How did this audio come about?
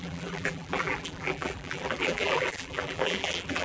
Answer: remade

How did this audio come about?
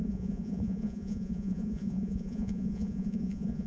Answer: remade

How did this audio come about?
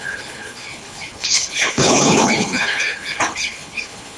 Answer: remade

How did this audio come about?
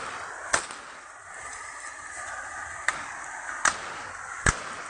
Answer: recorded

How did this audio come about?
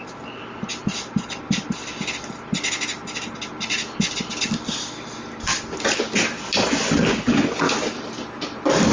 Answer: recorded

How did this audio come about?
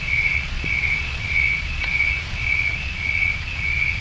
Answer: remade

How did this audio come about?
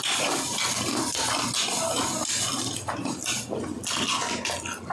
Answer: remade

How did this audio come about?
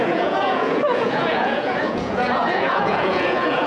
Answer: remade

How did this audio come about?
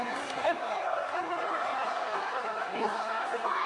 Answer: remade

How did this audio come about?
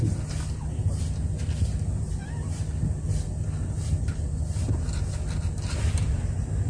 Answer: recorded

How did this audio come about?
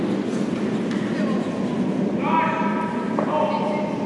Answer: recorded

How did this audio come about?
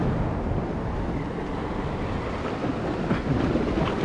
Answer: recorded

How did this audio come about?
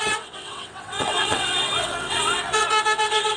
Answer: remade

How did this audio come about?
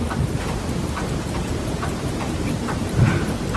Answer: recorded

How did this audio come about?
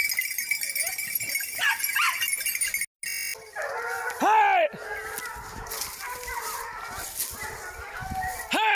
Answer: recorded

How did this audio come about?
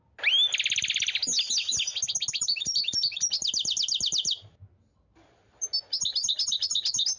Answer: recorded